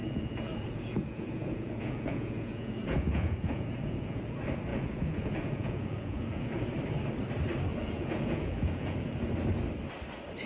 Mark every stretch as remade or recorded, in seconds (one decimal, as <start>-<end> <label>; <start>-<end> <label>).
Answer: 0.0-4.2 remade; 4.2-4.7 recorded; 4.7-6.6 remade; 6.6-7.7 recorded; 7.7-9.3 remade; 9.3-10.4 recorded